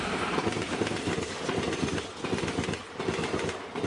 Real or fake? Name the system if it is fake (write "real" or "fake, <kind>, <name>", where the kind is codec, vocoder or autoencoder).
real